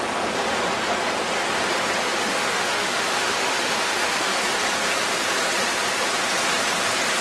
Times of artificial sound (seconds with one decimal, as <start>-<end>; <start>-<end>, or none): 2.2-4.4